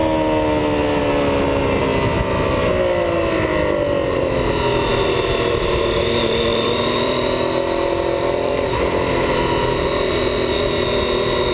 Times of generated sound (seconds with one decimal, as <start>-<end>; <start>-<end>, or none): 6.5-9.6